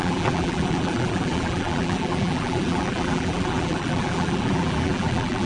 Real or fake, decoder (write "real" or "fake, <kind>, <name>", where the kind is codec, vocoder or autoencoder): fake, vocoder, BigVGAN v2